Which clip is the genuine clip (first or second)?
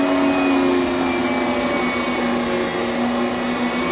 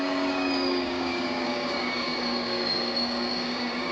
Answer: first